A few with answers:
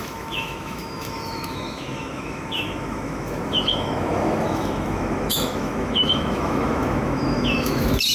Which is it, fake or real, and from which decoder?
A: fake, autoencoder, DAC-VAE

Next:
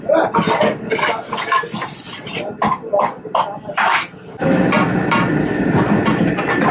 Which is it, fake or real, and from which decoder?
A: real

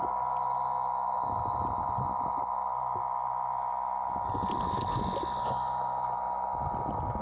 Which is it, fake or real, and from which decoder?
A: real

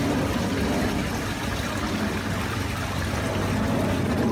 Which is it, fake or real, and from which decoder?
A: real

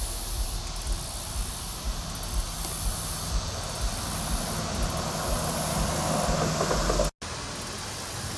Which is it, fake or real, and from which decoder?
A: real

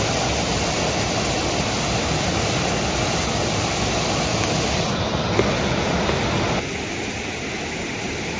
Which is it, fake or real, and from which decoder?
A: real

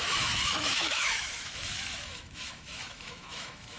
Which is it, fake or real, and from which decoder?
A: fake, autoencoder, DAC-VAE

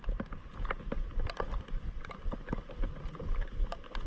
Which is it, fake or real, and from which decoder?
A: real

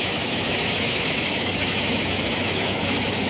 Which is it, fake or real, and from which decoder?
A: fake, autoencoder, DAC-VAE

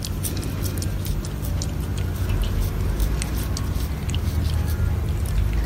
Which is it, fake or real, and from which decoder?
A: real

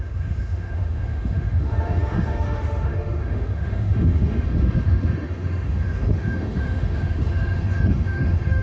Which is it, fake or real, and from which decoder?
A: fake, autoencoder, DAC-VAE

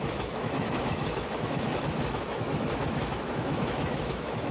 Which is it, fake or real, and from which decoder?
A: fake, autoencoder, DAC-VAE